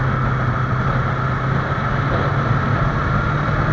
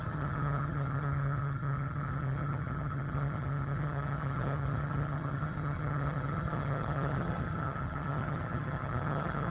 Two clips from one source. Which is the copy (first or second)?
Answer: second